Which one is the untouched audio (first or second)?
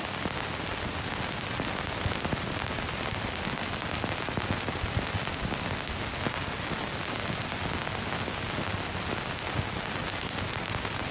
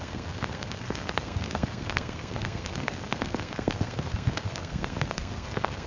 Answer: first